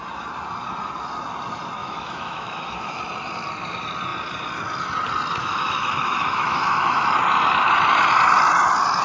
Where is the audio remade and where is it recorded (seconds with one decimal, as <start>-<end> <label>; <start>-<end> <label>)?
0.0-1.8 recorded; 1.8-3.0 remade; 3.0-5.4 recorded; 5.4-7.0 remade; 7.0-9.0 recorded

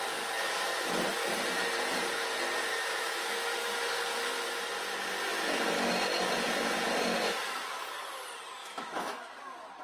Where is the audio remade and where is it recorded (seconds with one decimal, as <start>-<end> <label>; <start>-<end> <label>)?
0.0-2.7 recorded; 2.7-3.4 remade; 3.4-8.6 recorded; 8.6-9.3 remade; 9.3-9.8 recorded

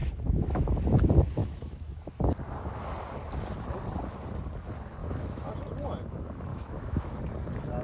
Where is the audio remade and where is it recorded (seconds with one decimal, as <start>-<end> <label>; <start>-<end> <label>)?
0.0-0.7 remade; 0.7-1.4 recorded; 1.4-2.1 remade; 2.1-5.0 recorded; 5.0-5.5 remade; 5.5-6.5 recorded; 6.5-7.2 remade; 7.2-7.8 recorded

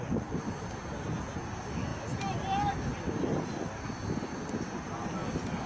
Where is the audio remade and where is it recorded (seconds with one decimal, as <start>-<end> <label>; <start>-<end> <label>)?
0.0-5.7 recorded

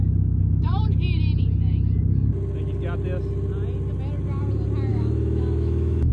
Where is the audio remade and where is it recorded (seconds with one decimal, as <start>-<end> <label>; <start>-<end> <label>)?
0.0-4.9 recorded; 4.9-6.1 remade

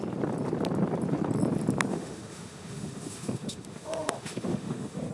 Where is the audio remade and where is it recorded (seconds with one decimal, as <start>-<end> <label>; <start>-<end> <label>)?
0.0-1.9 recorded; 1.9-5.1 remade

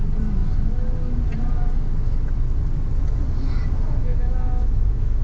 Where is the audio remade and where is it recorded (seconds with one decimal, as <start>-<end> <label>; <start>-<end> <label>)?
0.0-4.0 recorded; 4.0-5.2 remade